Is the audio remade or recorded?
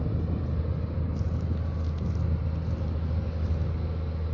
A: recorded